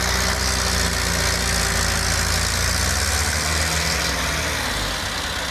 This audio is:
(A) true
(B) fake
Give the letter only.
A